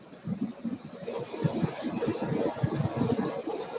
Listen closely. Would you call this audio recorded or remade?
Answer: recorded